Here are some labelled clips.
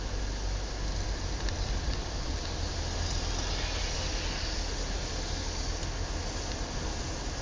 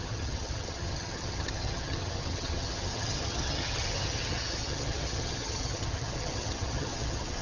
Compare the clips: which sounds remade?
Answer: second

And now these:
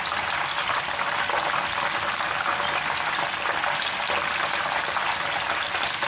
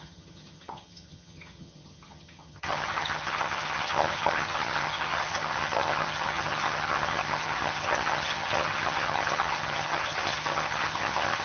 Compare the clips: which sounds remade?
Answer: second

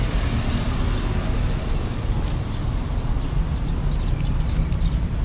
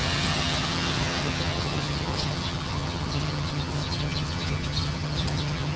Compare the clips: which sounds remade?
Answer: second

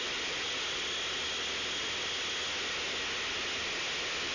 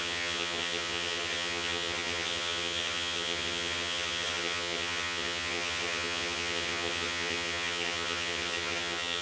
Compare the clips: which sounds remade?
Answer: second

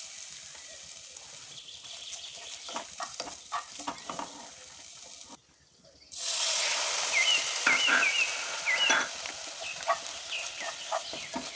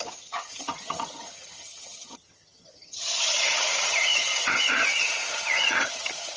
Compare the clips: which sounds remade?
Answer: second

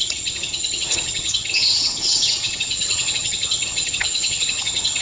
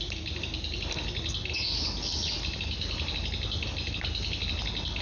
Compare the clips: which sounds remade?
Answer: first